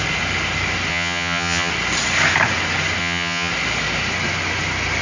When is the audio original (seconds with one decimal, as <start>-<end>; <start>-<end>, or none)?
0.0-0.9; 1.7-3.0; 3.5-5.0